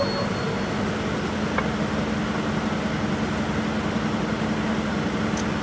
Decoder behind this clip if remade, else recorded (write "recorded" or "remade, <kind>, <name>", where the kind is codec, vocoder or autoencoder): recorded